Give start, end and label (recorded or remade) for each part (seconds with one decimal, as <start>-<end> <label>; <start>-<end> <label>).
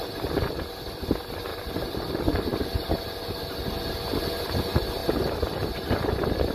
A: 0.0-6.5 recorded